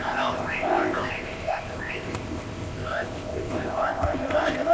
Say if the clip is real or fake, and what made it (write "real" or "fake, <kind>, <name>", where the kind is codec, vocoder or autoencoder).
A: fake, codec, ZipCodec